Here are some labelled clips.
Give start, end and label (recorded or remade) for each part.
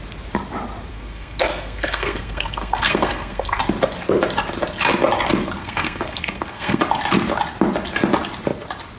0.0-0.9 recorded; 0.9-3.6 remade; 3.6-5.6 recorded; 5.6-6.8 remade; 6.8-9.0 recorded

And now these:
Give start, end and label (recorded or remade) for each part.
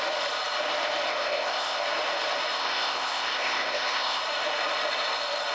0.0-1.1 recorded; 1.1-1.8 remade; 1.8-2.6 recorded; 2.6-4.2 remade; 4.2-5.5 recorded